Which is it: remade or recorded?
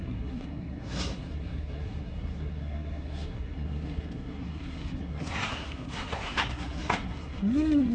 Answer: remade